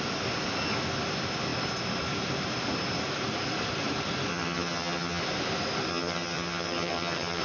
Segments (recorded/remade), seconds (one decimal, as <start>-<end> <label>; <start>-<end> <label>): 0.0-4.3 recorded; 4.3-5.2 remade; 5.2-5.9 recorded; 5.9-7.4 remade